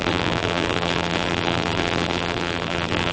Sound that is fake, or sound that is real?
fake